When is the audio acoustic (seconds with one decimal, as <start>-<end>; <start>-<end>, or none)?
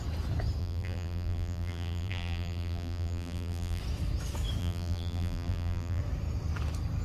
0.0-0.6; 3.8-4.6; 6.0-7.0